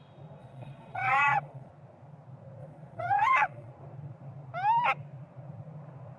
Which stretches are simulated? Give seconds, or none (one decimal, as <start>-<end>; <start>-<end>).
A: 0.4-1.7; 2.6-3.7